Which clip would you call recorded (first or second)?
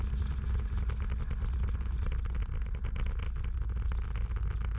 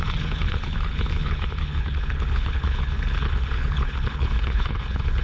first